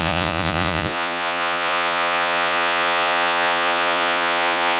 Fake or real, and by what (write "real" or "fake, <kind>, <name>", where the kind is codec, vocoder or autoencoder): fake, vocoder, Vocos